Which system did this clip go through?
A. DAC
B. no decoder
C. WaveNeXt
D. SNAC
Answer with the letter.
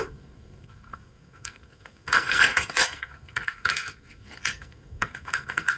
D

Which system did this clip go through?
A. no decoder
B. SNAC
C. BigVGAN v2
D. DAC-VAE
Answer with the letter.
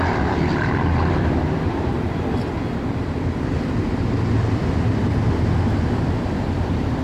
C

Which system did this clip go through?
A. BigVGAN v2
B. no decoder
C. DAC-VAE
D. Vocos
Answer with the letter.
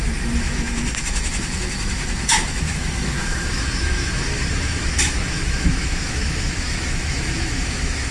C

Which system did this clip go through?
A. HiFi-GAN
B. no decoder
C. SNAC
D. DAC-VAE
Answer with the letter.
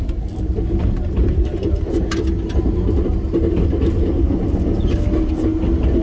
B